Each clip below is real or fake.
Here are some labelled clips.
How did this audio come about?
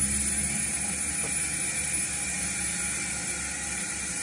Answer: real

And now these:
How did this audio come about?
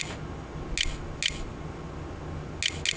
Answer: real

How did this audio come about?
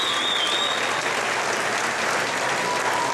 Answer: real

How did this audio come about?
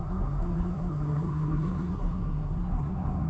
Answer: fake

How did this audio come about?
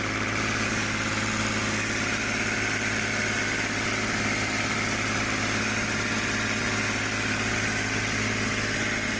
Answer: real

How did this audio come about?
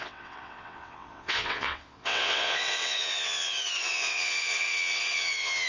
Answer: fake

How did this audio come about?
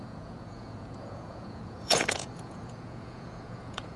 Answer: fake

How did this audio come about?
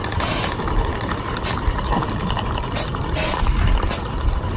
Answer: real